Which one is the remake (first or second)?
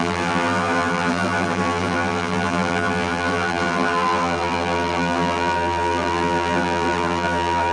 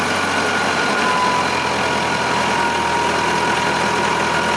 first